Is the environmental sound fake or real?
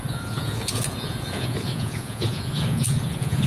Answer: fake